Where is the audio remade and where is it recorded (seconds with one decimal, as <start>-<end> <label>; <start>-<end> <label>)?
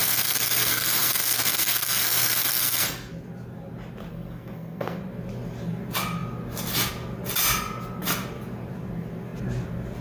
0.0-3.1 remade; 3.1-4.1 recorded; 4.1-5.0 remade; 5.0-10.0 recorded